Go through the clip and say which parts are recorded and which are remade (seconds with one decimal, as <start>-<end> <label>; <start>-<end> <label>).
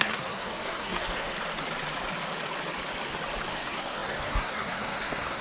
0.0-1.3 remade; 1.3-3.5 recorded; 3.5-5.4 remade